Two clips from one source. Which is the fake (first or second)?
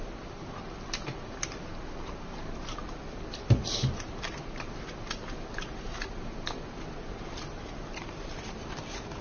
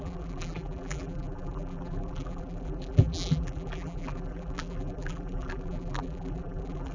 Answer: second